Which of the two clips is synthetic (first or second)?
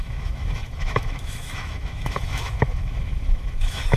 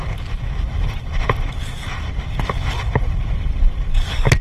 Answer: first